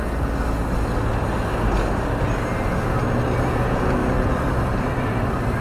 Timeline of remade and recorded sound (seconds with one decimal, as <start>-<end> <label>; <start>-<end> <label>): 0.0-3.4 recorded; 3.4-4.0 remade; 4.0-5.6 recorded